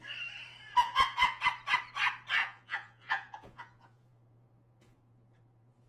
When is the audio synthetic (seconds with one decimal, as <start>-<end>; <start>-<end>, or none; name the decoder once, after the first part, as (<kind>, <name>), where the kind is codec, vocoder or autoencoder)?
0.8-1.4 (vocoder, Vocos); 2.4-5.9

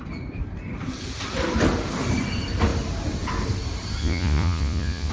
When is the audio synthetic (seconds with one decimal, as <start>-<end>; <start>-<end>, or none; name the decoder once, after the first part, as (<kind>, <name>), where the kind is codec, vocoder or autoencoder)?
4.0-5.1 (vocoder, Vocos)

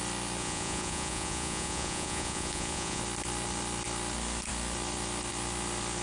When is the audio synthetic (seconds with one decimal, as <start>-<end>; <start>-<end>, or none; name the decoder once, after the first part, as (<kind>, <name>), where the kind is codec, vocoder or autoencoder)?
0.4-3.0 (vocoder, Vocos)

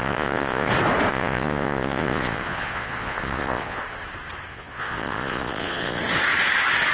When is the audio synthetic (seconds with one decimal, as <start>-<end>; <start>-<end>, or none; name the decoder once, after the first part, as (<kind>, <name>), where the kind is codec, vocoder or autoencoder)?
0.0-0.7 (vocoder, Vocos); 1.1-3.8; 4.5-6.0

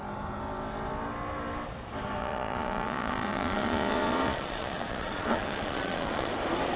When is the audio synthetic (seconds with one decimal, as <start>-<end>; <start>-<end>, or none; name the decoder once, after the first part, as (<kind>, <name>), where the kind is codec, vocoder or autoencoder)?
2.2-6.3 (vocoder, Vocos)

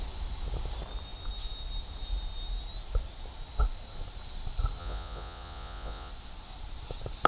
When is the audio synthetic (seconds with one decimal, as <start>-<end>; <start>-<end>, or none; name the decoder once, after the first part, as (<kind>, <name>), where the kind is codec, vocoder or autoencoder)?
4.8-6.1 (vocoder, Vocos)

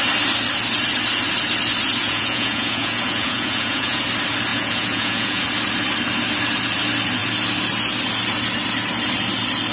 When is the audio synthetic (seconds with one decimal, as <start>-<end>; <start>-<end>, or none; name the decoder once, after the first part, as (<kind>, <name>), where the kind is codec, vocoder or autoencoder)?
2.0-4.0 (vocoder, Vocos); 4.5-5.4